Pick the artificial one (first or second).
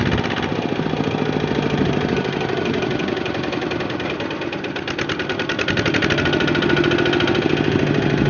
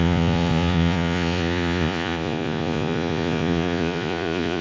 second